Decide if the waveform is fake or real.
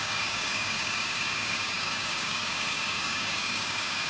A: fake